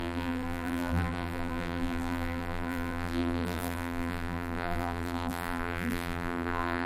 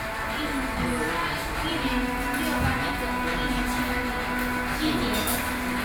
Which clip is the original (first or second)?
second